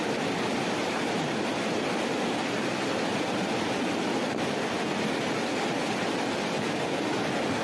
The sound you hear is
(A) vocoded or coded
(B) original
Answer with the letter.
B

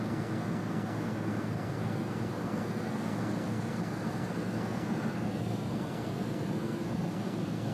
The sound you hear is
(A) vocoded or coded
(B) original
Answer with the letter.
A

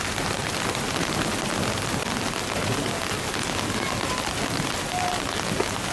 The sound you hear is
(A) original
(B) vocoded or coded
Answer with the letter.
A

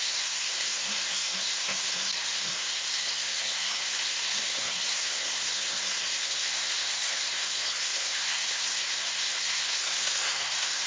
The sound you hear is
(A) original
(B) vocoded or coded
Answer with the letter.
B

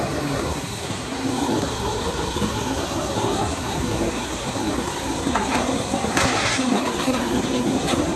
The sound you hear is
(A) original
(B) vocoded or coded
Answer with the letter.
B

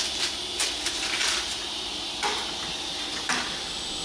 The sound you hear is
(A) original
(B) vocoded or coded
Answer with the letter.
A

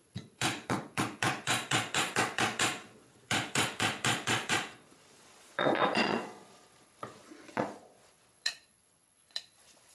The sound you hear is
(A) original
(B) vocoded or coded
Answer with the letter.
B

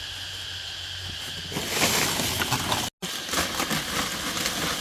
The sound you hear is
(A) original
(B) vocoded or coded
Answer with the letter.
A